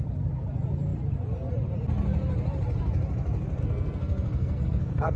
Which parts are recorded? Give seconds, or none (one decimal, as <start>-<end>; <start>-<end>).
0.0-3.6